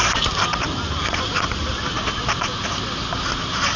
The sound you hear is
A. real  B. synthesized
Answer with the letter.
A